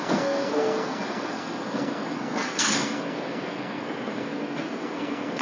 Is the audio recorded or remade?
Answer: remade